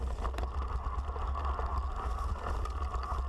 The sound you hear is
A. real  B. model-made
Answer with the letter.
A